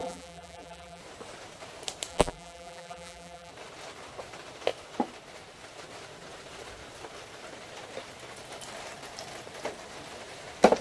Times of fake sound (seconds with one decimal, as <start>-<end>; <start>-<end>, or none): 0.0-1.0; 2.1-3.5